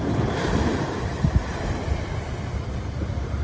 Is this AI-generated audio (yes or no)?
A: yes